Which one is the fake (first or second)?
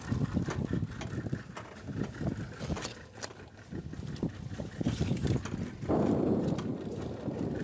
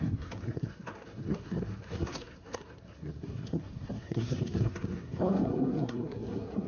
second